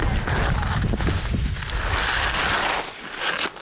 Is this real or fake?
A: real